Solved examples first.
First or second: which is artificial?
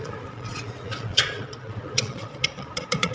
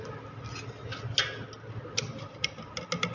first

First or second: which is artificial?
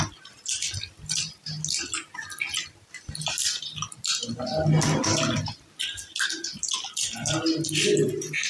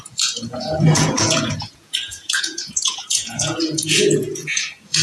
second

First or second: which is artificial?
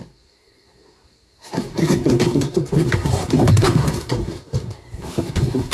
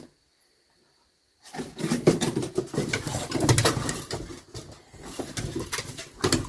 first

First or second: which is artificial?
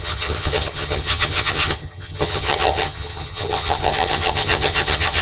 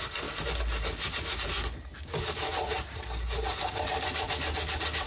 first